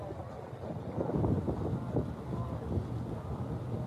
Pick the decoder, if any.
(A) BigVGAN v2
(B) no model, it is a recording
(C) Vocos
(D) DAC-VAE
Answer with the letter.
B